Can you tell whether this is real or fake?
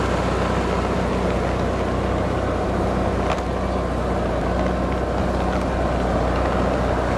real